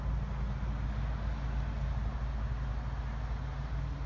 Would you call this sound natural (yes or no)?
yes